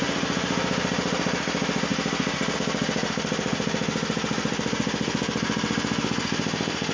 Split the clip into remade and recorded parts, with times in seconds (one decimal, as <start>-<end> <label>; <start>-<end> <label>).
0.0-6.9 recorded